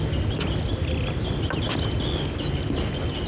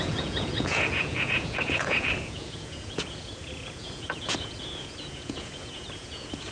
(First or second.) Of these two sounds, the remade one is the second